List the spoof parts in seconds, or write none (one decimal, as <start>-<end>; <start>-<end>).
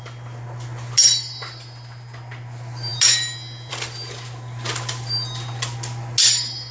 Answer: none